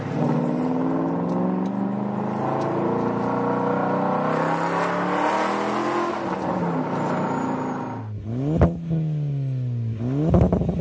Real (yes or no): yes